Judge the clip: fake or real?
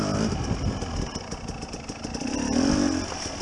real